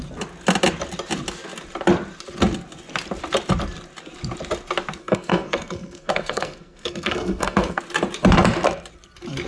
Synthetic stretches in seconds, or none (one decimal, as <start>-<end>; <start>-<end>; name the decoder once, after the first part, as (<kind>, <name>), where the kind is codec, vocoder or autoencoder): 5.0-7.8 (codec, SNAC)

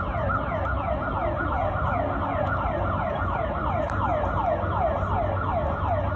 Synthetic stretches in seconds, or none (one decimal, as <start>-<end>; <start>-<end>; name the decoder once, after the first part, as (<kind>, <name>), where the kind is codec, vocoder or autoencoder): none

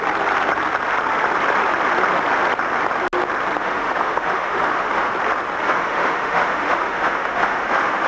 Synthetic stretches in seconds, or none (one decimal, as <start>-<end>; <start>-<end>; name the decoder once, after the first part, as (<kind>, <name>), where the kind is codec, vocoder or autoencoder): 3.6-5.1 (autoencoder, DAC-VAE); 5.6-8.1

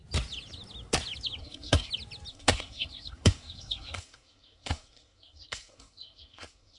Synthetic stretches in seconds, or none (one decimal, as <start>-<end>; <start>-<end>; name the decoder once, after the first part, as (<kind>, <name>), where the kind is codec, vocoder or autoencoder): 1.4-1.9 (codec, SNAC); 2.3-6.8

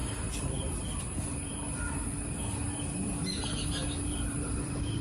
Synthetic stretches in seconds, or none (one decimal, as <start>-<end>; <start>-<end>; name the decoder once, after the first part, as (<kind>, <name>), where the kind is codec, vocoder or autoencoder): 1.0-1.6 (vocoder, BigVGAN v2); 4.0-5.0

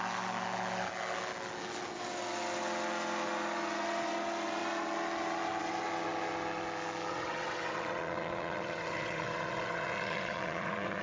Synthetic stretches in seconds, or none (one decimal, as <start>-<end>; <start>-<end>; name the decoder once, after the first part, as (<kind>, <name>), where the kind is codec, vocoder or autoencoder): 7.1-11.0 (vocoder, WaveNeXt)